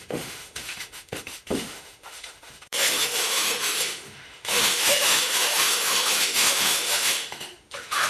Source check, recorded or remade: remade